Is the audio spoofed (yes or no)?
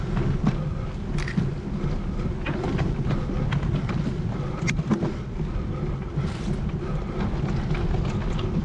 no